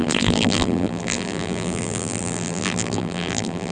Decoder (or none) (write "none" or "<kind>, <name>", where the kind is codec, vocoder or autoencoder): vocoder, BigVGAN v2